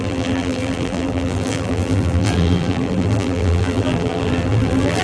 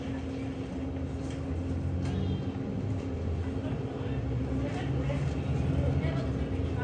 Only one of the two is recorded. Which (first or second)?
second